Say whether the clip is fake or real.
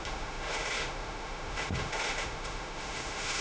fake